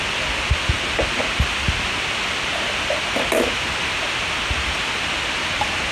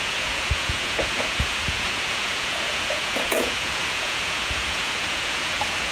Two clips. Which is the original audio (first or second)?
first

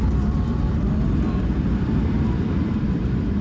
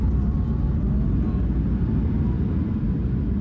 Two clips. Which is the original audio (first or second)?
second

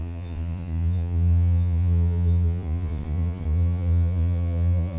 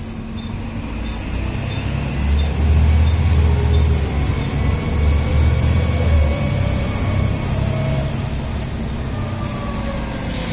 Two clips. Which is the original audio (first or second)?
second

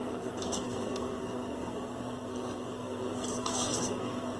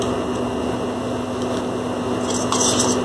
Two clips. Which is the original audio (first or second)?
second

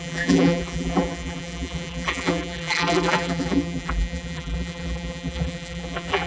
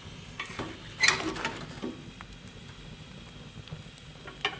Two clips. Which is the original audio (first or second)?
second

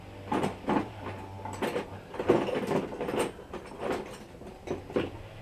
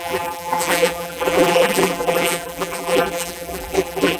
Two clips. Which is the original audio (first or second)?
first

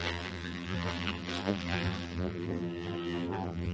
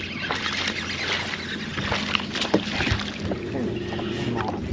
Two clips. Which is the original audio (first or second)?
second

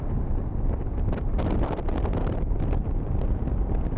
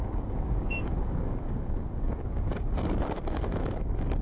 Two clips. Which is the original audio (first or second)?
first